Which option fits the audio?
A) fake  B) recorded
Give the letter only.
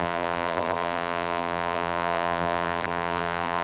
A